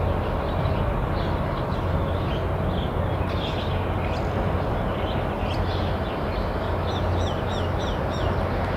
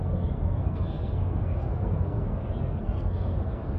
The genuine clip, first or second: first